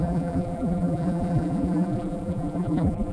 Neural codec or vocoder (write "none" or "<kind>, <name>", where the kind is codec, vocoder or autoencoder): vocoder, BigVGAN v2